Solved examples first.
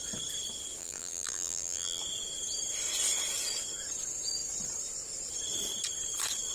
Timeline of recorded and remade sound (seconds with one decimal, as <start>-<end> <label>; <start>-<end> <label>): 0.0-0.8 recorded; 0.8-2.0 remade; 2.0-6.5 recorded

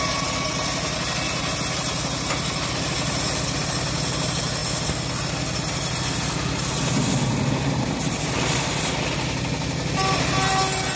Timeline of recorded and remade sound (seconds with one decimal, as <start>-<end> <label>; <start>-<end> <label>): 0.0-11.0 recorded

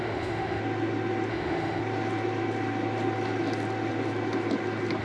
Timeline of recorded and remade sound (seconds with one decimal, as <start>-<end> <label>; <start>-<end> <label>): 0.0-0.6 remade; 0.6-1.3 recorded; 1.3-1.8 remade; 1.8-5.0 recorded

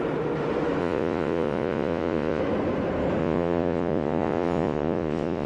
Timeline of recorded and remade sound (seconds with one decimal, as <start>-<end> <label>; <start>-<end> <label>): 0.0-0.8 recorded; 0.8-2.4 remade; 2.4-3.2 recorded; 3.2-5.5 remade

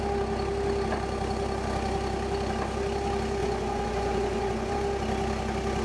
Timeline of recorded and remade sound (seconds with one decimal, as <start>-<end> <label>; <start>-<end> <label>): 0.0-3.4 recorded; 3.4-4.7 remade; 4.7-5.8 recorded